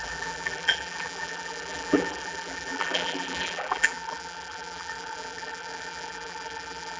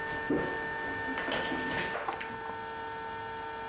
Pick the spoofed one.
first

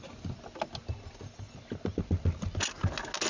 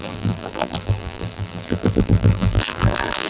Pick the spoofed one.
second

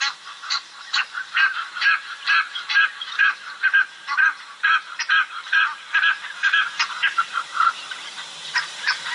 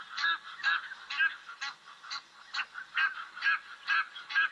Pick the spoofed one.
first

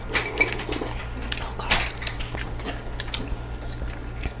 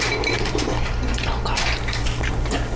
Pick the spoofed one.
second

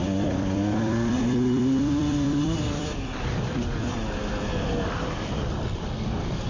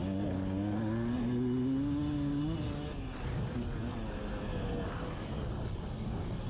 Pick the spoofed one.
first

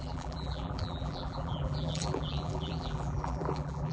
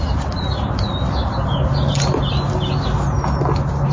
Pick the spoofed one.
first